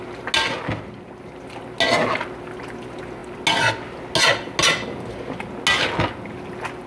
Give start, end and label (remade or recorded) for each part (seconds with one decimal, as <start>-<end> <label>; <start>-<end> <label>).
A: 0.0-6.9 recorded